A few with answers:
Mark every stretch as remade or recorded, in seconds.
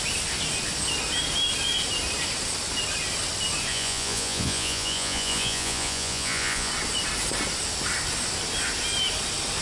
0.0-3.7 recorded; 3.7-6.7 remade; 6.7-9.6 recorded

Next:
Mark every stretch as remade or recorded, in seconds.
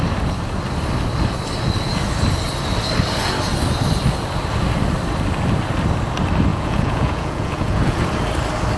0.0-6.5 recorded; 6.5-8.0 remade; 8.0-8.8 recorded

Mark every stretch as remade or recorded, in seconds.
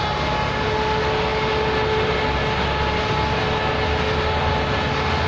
0.0-5.3 recorded